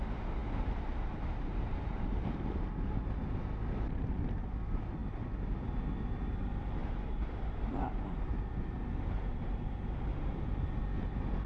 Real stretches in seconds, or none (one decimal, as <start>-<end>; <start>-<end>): 0.0-0.4; 3.0-6.8; 10.8-11.5